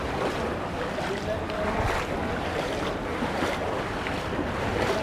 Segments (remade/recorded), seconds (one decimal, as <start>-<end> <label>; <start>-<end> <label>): 0.0-2.3 recorded; 2.3-3.4 remade; 3.4-5.0 recorded